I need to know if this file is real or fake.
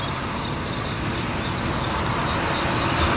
real